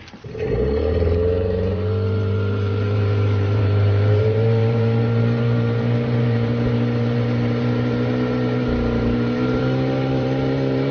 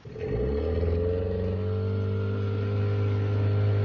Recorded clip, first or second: second